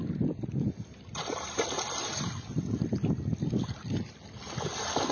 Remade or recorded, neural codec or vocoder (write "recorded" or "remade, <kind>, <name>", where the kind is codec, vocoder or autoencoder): remade, vocoder, BigVGAN v2